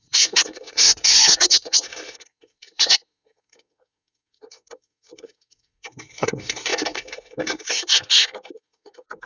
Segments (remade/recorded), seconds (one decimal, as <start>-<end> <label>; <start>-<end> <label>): 0.0-9.3 remade